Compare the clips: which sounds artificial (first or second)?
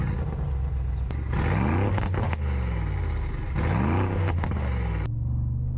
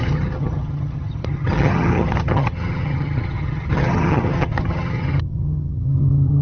second